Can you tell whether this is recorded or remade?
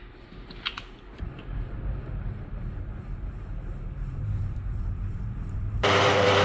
remade